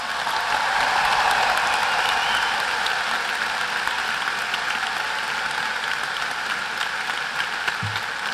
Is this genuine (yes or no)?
yes